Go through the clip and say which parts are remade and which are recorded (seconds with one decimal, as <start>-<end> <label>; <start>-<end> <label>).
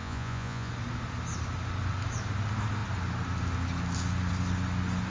0.0-0.7 remade; 0.7-5.1 recorded